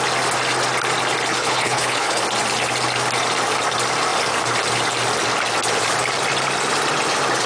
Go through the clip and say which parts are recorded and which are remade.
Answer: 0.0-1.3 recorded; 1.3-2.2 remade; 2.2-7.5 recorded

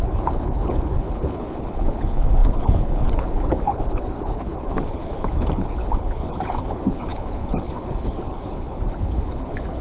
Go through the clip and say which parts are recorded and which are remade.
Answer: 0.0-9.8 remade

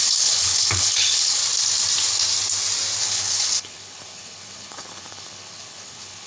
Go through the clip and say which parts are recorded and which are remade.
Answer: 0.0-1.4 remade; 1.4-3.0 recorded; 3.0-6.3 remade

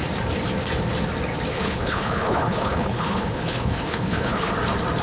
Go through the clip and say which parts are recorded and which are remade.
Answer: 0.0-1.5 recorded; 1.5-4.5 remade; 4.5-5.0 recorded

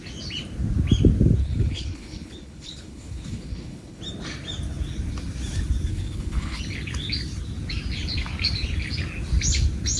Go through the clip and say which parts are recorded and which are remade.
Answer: 0.0-1.4 recorded; 1.4-4.0 remade; 4.0-5.9 recorded; 5.9-6.6 remade; 6.6-10.0 recorded

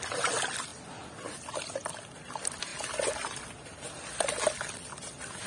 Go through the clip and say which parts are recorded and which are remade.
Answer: 0.0-5.5 recorded